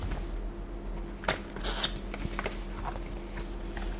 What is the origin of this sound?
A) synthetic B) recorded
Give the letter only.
B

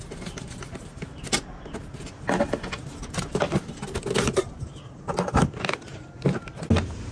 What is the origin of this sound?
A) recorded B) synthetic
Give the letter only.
A